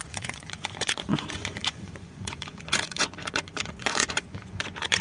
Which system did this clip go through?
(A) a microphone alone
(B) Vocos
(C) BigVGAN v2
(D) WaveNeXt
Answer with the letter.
B